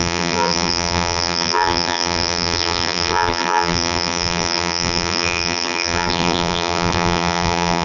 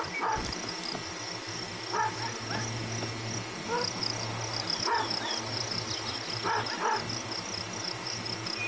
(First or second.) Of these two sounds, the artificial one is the first